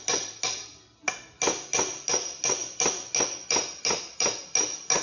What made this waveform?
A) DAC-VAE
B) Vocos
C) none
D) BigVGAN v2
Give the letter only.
C